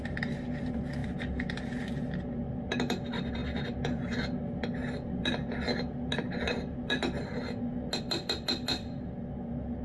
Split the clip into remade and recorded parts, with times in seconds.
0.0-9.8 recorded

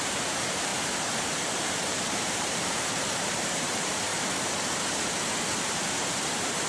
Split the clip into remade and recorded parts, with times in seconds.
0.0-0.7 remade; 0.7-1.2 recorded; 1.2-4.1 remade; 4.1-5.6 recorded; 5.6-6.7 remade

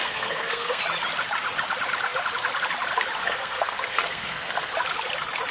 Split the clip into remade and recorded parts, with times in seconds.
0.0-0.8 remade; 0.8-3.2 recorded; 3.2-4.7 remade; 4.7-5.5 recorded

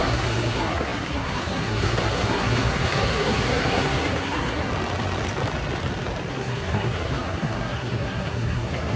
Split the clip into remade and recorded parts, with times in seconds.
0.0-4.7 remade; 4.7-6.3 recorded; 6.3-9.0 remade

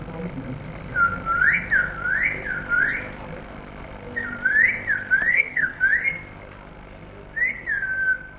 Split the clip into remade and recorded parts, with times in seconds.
0.0-5.3 recorded; 5.3-5.8 remade; 5.8-8.4 recorded

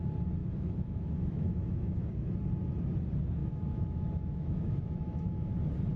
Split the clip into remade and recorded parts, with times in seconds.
0.0-0.4 recorded; 0.4-2.1 remade; 2.1-3.4 recorded; 3.4-5.5 remade; 5.5-6.0 recorded